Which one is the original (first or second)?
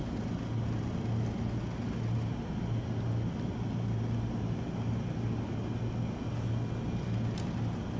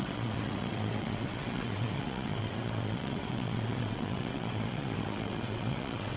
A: first